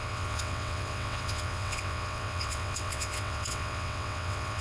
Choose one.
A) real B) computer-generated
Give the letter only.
B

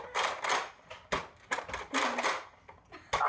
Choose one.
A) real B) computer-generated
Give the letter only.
A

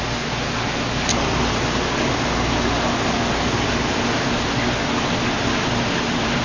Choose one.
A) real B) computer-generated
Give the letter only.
A